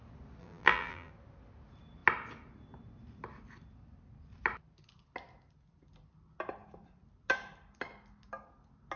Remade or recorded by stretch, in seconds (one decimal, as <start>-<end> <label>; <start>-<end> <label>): 0.0-0.4 recorded; 0.4-1.1 remade; 1.1-9.0 recorded